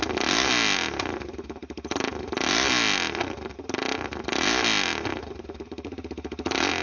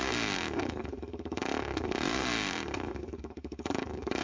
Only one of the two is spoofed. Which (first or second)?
second